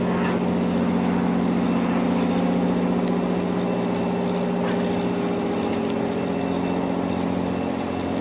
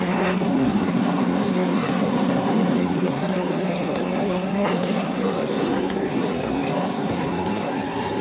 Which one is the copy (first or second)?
second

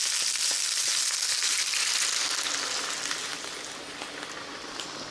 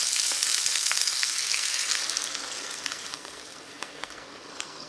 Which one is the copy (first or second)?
second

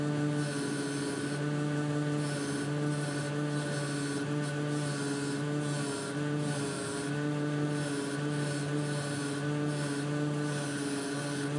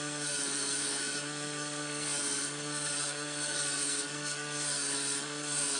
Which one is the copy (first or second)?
second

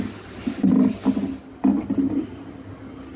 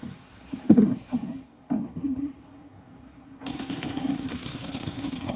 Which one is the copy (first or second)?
second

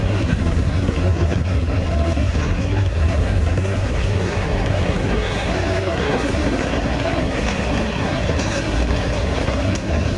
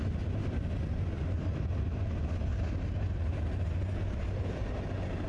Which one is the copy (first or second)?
first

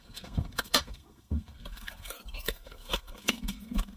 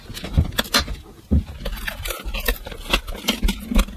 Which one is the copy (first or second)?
first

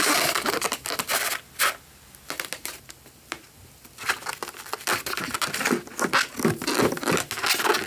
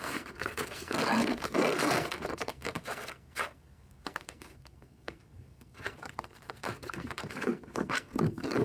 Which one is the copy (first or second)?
second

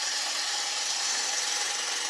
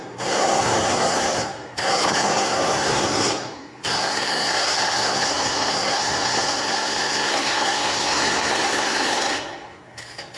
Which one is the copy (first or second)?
second